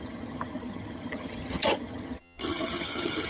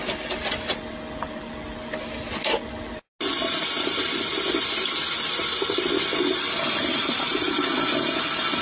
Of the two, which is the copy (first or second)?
first